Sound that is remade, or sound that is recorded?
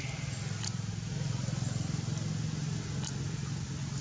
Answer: recorded